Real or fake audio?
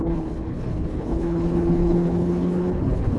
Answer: fake